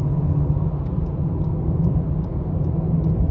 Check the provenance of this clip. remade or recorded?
recorded